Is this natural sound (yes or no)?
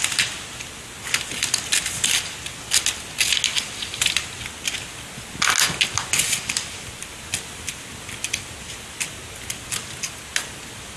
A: yes